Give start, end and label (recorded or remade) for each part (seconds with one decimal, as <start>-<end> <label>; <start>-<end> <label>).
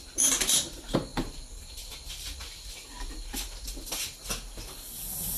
0.0-1.1 recorded; 1.1-4.3 remade; 4.3-5.4 recorded